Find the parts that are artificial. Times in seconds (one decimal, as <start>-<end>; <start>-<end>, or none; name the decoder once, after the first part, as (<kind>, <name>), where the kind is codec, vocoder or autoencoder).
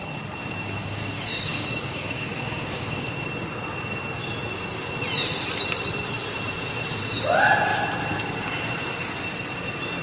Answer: 0.8-3.1 (codec, DAC)